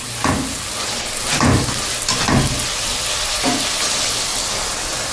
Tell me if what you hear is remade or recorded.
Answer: recorded